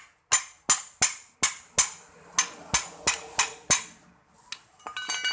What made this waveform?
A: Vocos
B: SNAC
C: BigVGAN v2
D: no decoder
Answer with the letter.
D